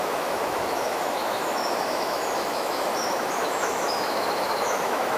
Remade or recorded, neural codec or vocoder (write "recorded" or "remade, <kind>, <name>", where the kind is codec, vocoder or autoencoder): remade, autoencoder, DAC-VAE